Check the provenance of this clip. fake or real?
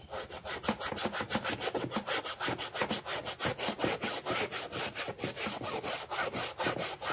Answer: real